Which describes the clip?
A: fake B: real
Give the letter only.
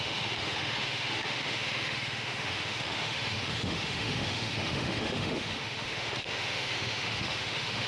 A